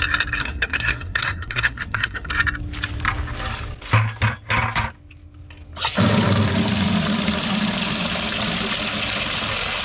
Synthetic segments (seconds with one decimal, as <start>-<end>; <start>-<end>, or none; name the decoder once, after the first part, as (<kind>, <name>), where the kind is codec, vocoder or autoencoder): 0.4-2.3 (codec, SNAC)